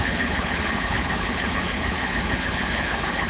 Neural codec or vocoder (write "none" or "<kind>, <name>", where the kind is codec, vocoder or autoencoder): codec, HILCodec